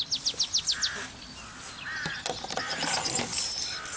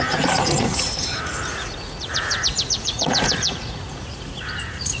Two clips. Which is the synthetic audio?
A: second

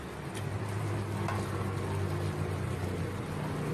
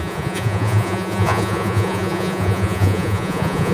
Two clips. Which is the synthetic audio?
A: second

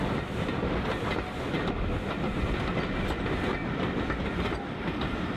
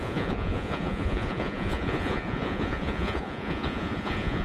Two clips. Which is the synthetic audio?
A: second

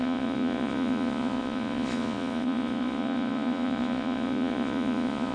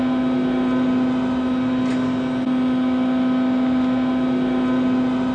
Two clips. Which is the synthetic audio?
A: first